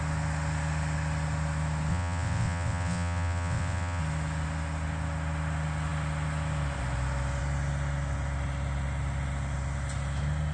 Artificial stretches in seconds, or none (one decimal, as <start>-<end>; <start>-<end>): 1.9-4.0